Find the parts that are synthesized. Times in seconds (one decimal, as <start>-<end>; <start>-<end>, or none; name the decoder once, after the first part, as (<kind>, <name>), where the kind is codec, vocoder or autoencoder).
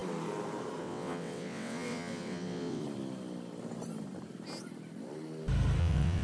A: 0.8-2.8 (vocoder, WaveNeXt); 5.8-6.2